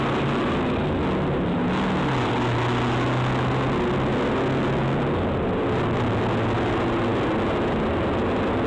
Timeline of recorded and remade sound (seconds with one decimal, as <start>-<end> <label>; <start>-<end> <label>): 0.0-8.7 recorded